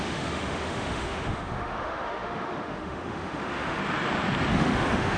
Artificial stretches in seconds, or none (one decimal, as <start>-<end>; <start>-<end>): 0.0-3.8; 4.5-5.2